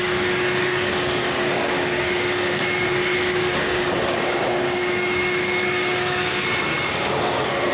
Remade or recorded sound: remade